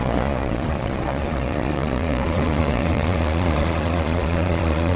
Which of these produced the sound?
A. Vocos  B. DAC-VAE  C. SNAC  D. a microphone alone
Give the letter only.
A